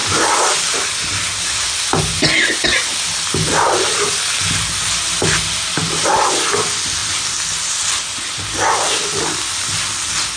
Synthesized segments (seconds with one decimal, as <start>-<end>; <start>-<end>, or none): 3.5-4.1